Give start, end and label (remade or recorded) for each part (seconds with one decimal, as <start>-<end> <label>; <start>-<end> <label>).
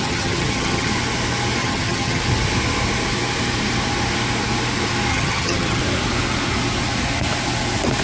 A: 0.0-0.9 remade; 0.9-1.6 recorded; 1.6-2.2 remade; 2.2-5.1 recorded; 5.1-5.8 remade; 5.8-8.0 recorded